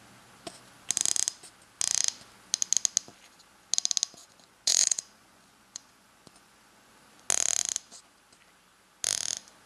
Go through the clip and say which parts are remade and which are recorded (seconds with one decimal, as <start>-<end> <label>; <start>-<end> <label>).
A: 0.0-4.2 recorded; 4.2-6.9 remade; 6.9-9.7 recorded